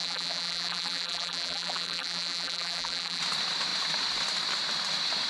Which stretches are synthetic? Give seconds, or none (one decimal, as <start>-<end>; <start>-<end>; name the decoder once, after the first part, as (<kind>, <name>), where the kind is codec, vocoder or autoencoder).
0.0-3.2 (vocoder, BigVGAN v2)